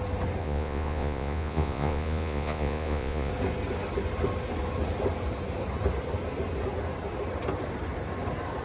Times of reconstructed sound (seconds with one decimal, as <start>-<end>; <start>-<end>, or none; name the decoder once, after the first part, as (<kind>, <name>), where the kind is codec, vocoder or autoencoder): 0.4-3.3 (vocoder, Vocos)